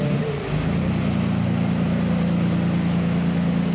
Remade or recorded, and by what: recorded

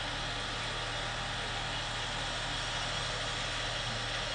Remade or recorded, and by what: recorded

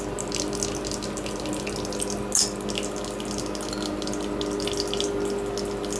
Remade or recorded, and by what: recorded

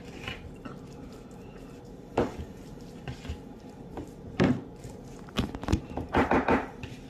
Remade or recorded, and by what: remade, vocoder, BigVGAN v2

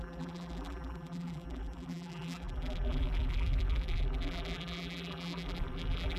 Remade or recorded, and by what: remade, vocoder, BigVGAN v2